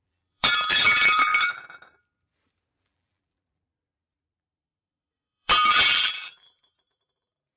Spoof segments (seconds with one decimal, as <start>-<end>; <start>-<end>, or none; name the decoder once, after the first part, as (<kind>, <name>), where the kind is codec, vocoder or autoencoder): 0.0-1.3 (vocoder, BigVGAN v2); 2.8-7.6